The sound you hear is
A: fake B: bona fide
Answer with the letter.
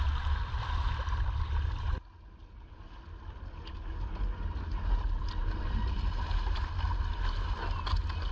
B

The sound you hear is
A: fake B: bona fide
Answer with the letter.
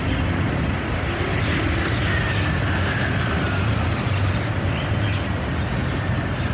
B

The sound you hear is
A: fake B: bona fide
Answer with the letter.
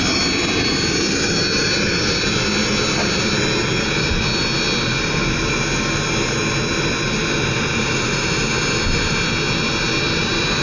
B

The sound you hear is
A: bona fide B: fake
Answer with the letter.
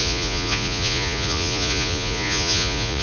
B